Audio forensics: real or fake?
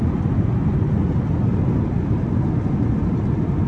real